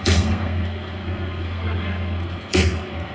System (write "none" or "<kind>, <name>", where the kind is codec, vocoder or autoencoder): codec, SNAC